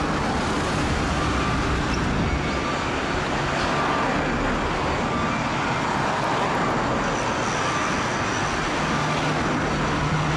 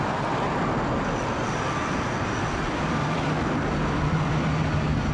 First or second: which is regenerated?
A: second